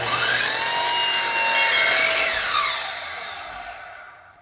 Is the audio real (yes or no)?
yes